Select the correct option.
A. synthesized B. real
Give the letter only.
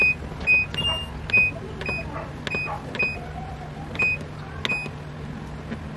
B